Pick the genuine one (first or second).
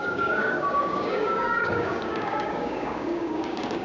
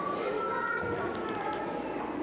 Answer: second